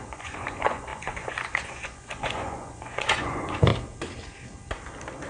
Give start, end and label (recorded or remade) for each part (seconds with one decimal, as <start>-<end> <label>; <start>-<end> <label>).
0.0-3.7 remade; 3.7-5.3 recorded